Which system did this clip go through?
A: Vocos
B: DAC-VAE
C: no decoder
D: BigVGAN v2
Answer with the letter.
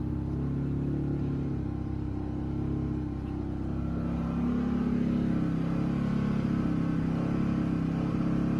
C